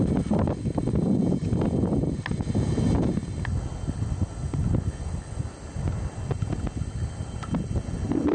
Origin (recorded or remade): recorded